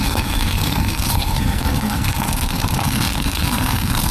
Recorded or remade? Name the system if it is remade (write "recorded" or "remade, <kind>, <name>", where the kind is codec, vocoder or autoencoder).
remade, codec, SNAC